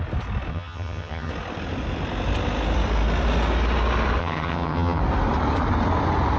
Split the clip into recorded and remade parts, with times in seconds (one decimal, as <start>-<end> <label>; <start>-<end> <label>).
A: 0.0-0.5 recorded; 0.5-1.3 remade; 1.3-4.2 recorded; 4.2-5.0 remade; 5.0-6.4 recorded